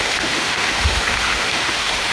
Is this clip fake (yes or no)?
yes